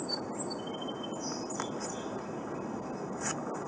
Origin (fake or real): real